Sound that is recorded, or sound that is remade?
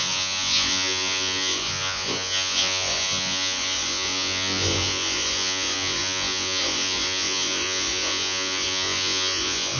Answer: remade